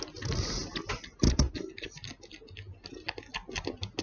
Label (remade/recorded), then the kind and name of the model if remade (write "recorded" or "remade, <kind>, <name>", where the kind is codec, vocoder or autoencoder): recorded